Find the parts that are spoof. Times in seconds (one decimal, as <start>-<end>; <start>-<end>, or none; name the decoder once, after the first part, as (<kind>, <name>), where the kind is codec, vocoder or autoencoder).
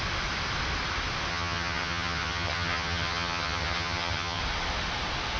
1.3-4.4 (vocoder, HiFi-GAN)